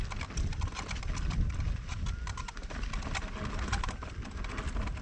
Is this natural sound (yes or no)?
no